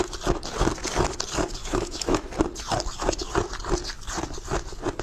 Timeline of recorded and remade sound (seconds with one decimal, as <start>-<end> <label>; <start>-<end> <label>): 0.0-1.6 recorded; 1.6-2.3 remade; 2.3-5.0 recorded